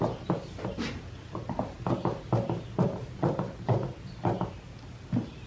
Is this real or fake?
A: real